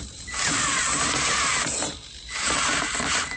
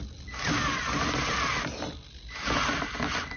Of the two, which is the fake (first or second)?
first